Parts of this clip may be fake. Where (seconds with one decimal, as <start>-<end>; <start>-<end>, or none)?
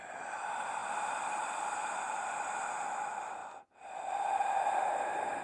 0.8-2.2